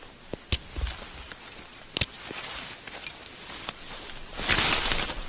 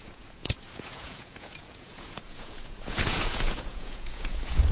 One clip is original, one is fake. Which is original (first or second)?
first